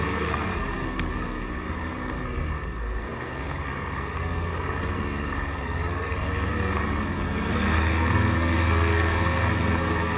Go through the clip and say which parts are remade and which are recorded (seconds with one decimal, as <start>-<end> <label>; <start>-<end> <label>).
0.0-10.2 remade